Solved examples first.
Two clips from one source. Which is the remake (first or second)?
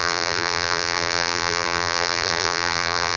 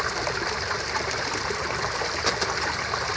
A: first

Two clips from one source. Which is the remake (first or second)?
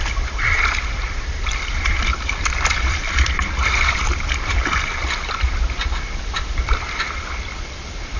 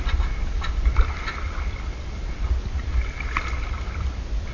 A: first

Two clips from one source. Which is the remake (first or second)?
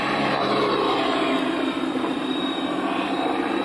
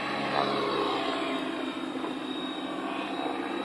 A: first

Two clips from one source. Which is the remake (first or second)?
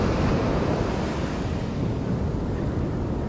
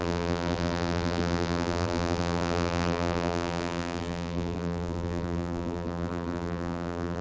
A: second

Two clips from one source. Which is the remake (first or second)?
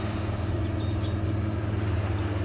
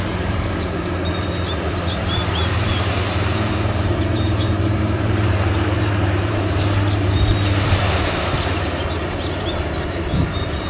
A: second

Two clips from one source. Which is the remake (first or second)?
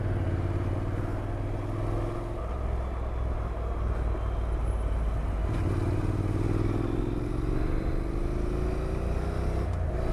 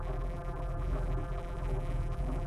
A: second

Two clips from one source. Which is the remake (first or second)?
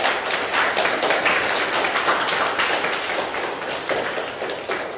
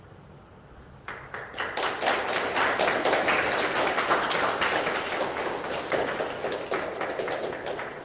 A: first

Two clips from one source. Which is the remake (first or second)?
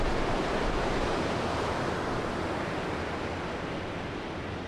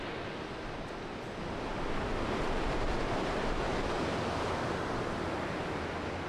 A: first